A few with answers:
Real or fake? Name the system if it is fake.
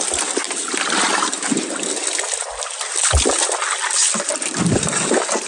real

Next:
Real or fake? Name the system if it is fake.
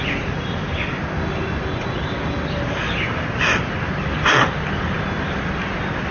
fake, vocoder, BigVGAN v2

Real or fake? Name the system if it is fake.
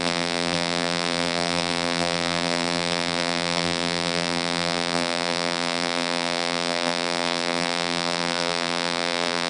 fake, vocoder, BigVGAN v2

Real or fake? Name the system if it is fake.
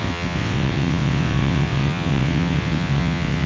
fake, vocoder, WaveNeXt